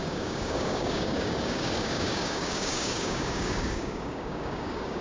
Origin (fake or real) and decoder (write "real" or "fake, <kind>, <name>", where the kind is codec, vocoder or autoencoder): fake, codec, DAC